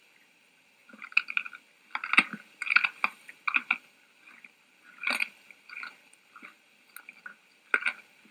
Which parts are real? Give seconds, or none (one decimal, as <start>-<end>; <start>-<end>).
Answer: 0.0-5.0; 6.9-8.3

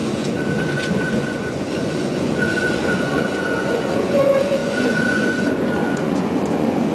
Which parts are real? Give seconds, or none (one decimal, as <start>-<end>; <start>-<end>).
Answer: none